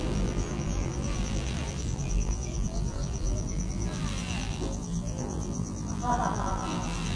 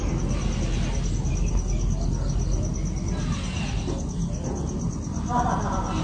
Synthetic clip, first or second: first